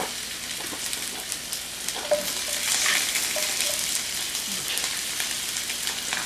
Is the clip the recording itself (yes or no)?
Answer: yes